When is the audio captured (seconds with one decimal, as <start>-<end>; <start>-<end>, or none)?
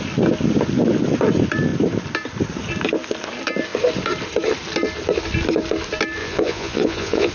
0.0-6.2